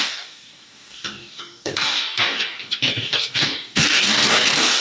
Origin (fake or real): fake